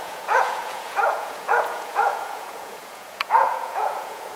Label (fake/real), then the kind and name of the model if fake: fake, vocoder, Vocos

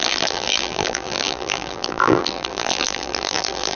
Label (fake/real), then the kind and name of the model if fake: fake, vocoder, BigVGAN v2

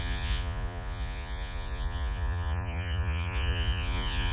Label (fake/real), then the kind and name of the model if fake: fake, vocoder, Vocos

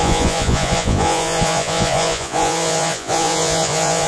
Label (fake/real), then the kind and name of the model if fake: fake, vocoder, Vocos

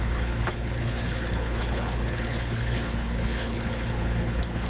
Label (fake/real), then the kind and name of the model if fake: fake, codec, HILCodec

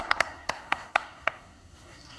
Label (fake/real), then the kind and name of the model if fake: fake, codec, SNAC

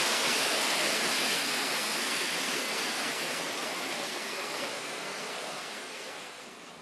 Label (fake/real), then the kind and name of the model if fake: fake, codec, SNAC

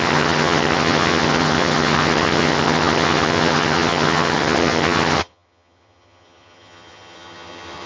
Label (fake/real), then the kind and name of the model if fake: fake, vocoder, HiFi-GAN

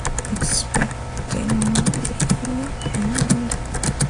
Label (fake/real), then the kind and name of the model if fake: real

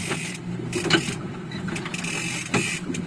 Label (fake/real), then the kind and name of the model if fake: real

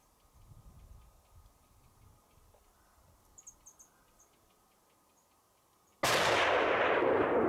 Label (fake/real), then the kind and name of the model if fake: real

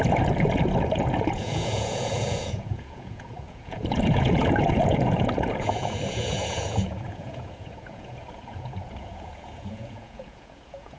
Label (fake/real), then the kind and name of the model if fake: fake, vocoder, Vocos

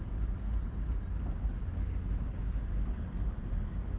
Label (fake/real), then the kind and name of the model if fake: real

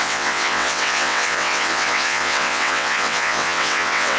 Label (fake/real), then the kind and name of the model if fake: fake, vocoder, WaveNeXt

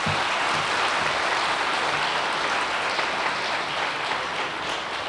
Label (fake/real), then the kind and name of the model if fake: real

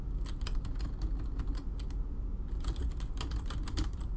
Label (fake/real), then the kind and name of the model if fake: real